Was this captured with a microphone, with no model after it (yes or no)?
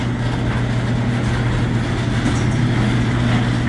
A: yes